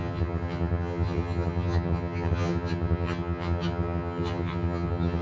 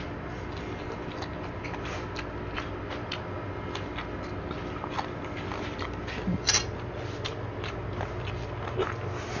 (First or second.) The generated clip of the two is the first